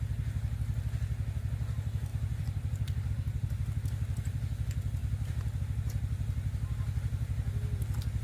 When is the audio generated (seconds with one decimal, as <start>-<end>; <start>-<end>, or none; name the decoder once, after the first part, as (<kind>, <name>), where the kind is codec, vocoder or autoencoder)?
2.1-3.1 (vocoder, BigVGAN v2); 5.0-5.6